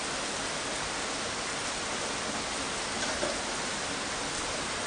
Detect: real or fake real